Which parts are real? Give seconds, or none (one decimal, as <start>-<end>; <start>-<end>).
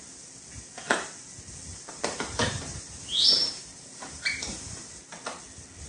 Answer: 0.0-1.7; 4.9-5.9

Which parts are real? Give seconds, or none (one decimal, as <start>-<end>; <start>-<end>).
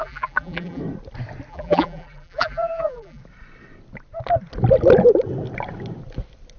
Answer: 0.8-1.5; 3.2-6.6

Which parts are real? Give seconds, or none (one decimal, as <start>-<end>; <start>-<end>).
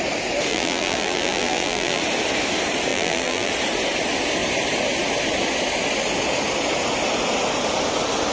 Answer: 0.0-0.5; 2.0-2.9; 3.5-8.3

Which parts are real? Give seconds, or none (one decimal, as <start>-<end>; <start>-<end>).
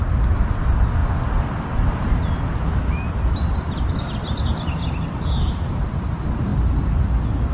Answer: 0.0-7.5